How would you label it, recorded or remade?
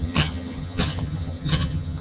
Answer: remade